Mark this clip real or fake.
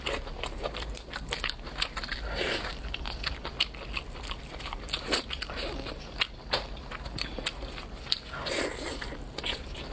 real